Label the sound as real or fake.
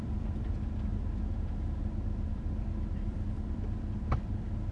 fake